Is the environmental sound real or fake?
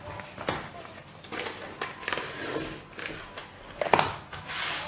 real